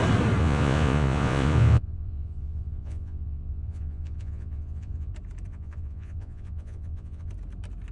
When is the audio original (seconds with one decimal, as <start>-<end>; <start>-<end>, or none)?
0.0-0.4; 5.1-5.5; 7.3-7.9